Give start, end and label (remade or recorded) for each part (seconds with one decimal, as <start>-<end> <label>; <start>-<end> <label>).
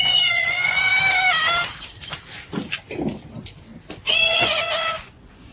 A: 0.0-0.9 remade; 0.9-4.1 recorded; 4.1-5.5 remade